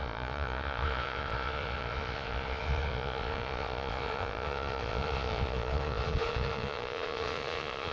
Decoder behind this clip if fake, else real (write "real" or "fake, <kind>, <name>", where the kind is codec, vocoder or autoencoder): fake, vocoder, Vocos